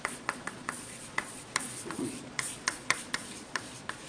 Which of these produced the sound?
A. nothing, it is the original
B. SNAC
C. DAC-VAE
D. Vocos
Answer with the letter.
D